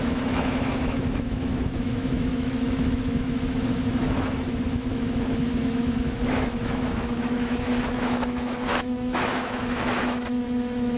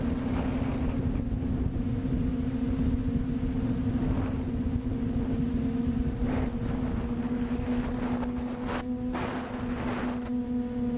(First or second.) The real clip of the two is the second